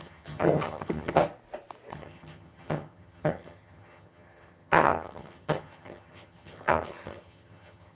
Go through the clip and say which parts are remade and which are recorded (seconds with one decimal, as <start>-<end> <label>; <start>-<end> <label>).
0.0-1.2 remade; 1.2-1.9 recorded; 1.9-7.9 remade